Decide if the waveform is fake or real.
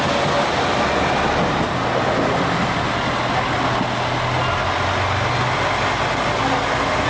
real